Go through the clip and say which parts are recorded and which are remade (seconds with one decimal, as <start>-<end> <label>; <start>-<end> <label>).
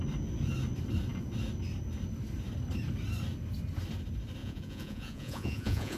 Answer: 0.0-4.4 recorded; 4.4-6.0 remade